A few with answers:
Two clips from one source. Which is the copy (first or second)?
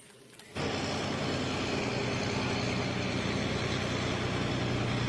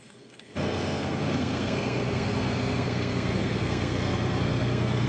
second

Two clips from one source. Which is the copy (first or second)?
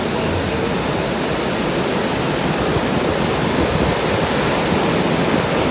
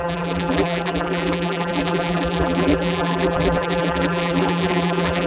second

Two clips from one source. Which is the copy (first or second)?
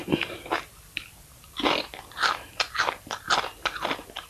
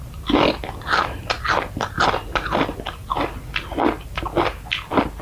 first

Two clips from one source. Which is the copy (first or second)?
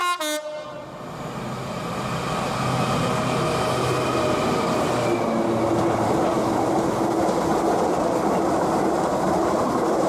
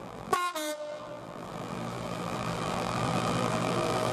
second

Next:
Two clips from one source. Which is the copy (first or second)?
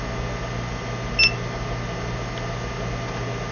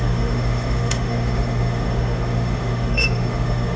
second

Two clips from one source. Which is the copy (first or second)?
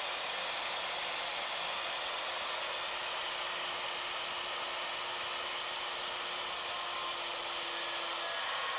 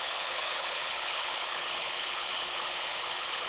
second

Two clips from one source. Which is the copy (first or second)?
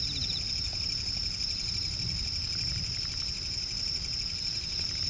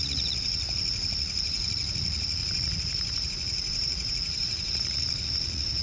second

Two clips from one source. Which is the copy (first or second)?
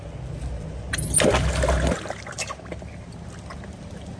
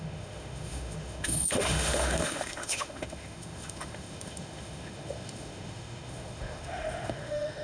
second